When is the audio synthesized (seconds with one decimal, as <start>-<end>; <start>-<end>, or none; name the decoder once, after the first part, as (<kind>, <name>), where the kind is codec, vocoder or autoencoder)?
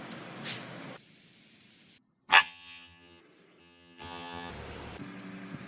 2.3-3.2 (vocoder, HiFi-GAN); 3.6-4.5